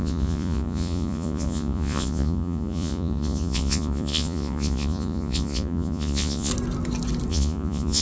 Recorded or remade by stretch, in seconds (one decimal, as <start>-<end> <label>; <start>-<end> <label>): 0.0-6.5 remade; 6.5-7.3 recorded; 7.3-8.0 remade